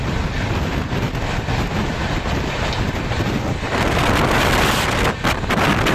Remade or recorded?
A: recorded